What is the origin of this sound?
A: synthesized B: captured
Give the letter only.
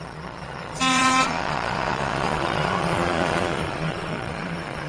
A